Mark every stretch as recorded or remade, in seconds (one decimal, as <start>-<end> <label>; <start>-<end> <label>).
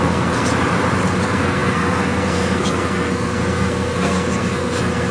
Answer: 0.0-0.5 remade; 0.5-1.2 recorded; 1.2-5.1 remade